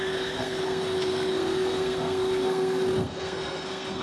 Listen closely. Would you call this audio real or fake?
fake